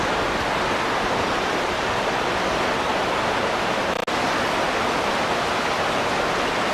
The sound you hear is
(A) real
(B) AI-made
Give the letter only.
A